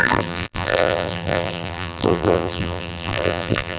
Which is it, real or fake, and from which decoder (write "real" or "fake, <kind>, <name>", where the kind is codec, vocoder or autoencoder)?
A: fake, vocoder, BigVGAN v2